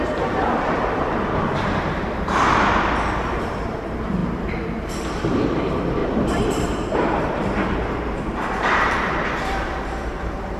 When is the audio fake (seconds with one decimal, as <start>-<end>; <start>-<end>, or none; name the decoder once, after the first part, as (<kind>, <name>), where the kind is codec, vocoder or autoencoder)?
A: 0.0-10.6 (vocoder, BigVGAN v2)